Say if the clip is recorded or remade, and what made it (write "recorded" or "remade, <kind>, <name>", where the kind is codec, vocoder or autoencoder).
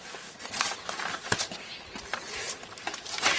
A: recorded